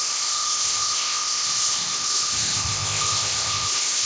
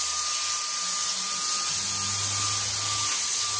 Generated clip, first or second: first